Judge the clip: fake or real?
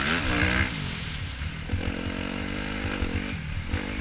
real